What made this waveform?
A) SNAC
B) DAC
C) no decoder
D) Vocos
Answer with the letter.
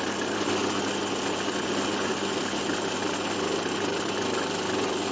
C